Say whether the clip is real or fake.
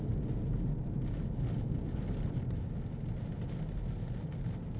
real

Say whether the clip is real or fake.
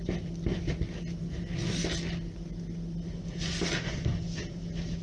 real